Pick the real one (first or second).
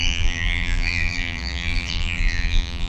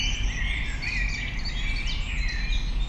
second